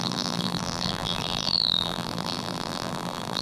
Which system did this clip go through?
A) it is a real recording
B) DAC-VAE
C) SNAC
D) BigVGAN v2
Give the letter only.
D